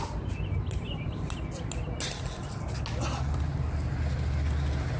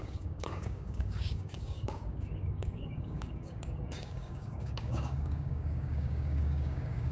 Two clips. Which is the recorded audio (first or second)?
first